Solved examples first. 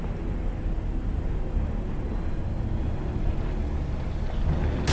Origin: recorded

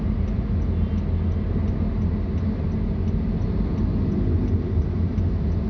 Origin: recorded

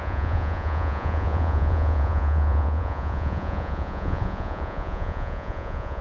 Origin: remade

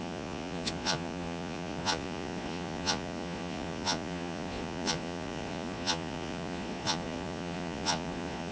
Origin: remade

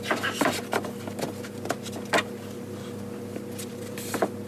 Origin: recorded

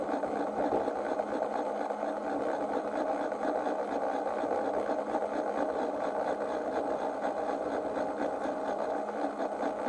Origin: recorded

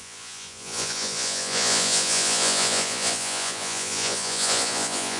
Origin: remade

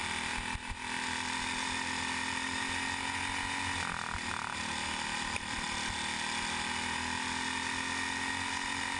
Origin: recorded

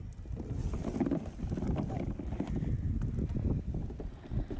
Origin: recorded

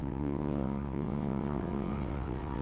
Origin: remade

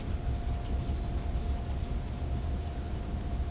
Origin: recorded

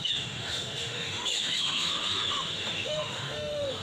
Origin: remade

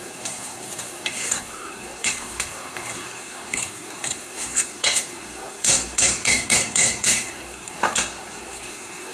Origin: remade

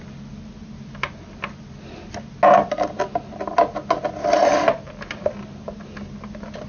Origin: recorded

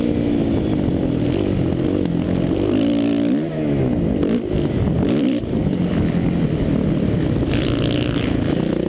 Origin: recorded